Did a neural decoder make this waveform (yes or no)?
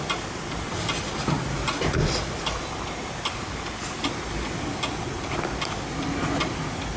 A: no